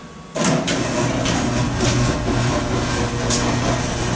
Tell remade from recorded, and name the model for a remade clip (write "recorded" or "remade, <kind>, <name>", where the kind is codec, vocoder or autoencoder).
recorded